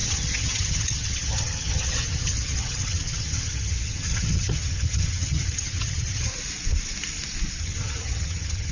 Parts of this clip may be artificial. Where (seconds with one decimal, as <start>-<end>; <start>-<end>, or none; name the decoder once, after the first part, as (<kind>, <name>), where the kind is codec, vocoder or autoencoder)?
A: 0.0-6.3 (vocoder, HiFi-GAN); 7.6-8.7